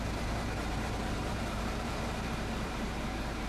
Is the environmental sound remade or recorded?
remade